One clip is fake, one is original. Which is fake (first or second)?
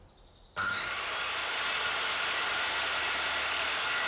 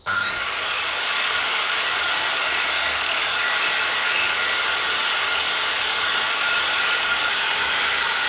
second